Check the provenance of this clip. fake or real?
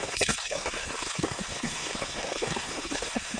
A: fake